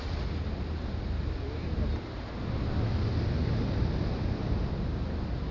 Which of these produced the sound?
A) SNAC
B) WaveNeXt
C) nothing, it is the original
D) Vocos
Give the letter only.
C